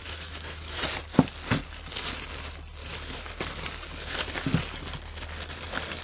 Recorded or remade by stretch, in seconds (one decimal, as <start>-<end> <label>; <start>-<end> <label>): 0.0-0.8 remade; 0.8-2.8 recorded; 2.8-3.3 remade; 3.3-6.0 recorded

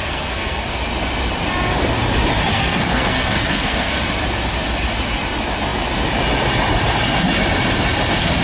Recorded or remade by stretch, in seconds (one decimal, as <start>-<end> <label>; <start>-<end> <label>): 0.0-0.7 remade; 0.7-2.5 recorded; 2.5-4.0 remade; 4.0-8.4 recorded

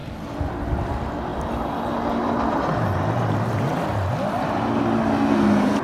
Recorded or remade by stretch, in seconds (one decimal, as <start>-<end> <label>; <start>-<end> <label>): 0.0-5.8 recorded

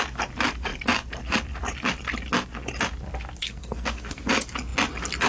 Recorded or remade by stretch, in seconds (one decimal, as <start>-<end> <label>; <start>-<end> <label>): 0.0-3.4 recorded; 3.4-4.2 remade; 4.2-5.3 recorded

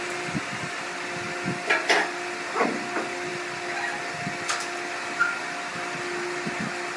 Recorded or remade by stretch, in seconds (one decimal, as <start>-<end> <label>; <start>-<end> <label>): 0.0-7.0 recorded

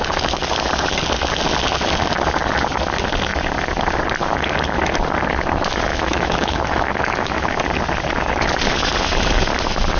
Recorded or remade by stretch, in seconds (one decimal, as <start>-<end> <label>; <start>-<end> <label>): 0.0-5.9 recorded; 5.9-7.6 remade; 7.6-10.0 recorded

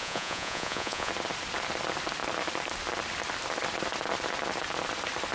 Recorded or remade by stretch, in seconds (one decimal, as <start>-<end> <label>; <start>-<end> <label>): 0.0-1.1 remade; 1.1-5.3 recorded

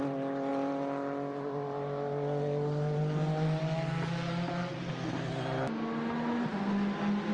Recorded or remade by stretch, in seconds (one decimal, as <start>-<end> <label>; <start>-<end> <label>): 0.0-7.3 recorded